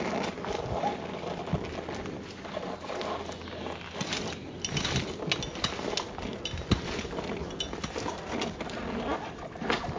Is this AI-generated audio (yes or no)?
no